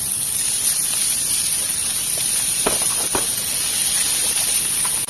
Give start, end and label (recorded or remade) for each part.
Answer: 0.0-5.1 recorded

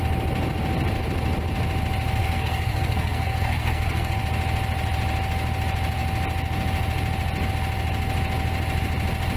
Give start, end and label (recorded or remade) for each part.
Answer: 0.0-2.2 recorded; 2.2-4.2 remade; 4.2-9.4 recorded